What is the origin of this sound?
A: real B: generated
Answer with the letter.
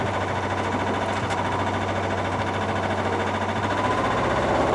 A